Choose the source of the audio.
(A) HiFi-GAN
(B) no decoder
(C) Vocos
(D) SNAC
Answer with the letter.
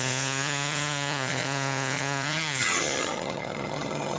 A